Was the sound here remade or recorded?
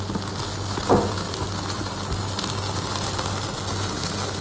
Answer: recorded